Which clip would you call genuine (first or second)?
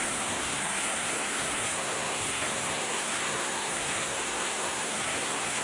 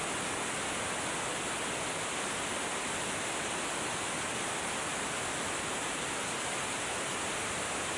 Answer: second